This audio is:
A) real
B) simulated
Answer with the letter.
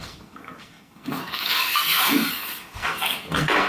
B